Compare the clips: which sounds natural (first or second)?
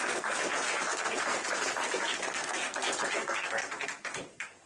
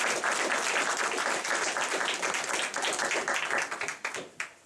second